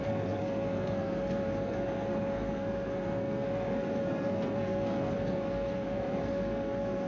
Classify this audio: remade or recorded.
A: remade